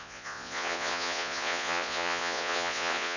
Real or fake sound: fake